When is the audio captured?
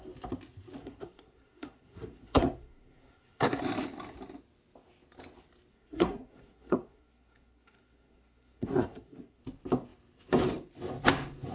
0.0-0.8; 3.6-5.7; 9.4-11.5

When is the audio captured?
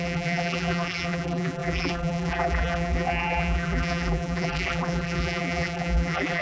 none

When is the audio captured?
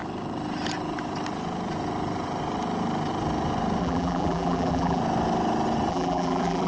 0.0-3.8; 5.0-5.9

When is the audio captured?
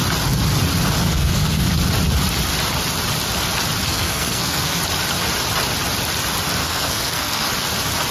0.0-1.0; 1.7-3.9; 4.8-6.6; 7.5-8.1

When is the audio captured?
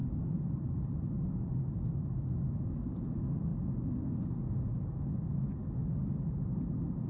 0.0-7.1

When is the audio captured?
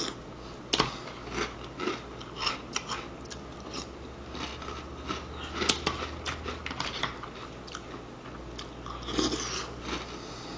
0.0-10.6